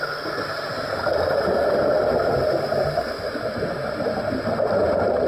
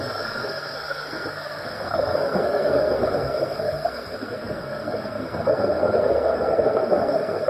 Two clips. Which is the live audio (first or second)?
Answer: first